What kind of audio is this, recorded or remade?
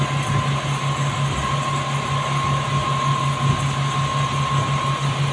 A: recorded